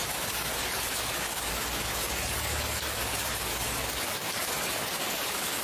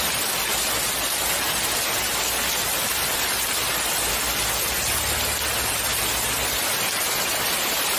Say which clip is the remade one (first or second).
first